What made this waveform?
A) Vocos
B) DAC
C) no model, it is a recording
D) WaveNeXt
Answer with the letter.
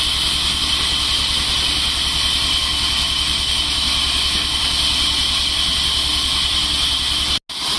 C